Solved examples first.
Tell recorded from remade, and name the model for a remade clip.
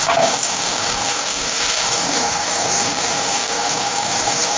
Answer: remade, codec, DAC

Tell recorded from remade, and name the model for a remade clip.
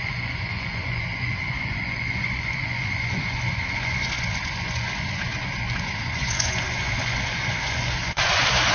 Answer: remade, vocoder, Vocos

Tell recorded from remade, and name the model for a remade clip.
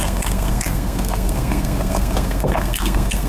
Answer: remade, codec, SNAC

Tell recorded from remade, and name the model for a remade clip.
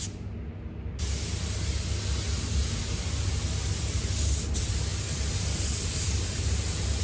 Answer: recorded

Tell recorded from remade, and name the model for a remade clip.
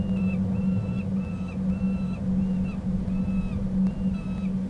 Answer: recorded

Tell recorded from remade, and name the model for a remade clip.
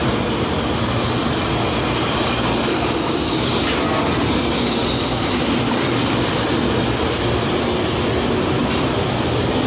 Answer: recorded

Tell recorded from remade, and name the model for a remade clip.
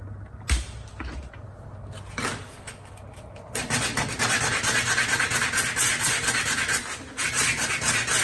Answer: recorded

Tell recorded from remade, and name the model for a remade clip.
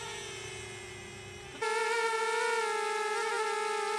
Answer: recorded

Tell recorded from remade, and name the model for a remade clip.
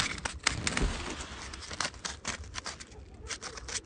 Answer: recorded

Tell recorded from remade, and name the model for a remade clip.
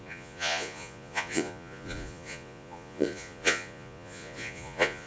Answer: remade, vocoder, Vocos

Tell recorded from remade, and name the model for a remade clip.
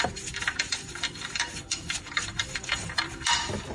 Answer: remade, vocoder, BigVGAN v2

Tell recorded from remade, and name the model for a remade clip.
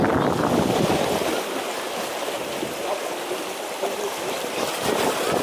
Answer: remade, vocoder, BigVGAN v2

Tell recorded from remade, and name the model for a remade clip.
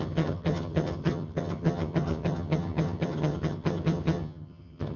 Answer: remade, vocoder, HiFi-GAN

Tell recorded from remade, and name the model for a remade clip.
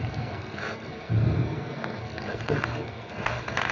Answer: remade, codec, SNAC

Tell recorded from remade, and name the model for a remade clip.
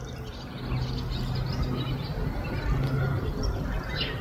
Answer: recorded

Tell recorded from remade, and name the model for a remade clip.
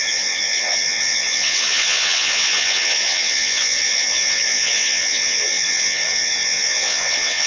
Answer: remade, vocoder, WaveNeXt